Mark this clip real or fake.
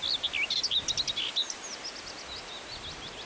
real